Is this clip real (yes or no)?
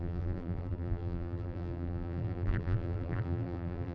no